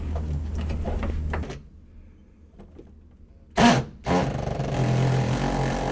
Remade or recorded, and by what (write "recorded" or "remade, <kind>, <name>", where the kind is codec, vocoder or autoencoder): recorded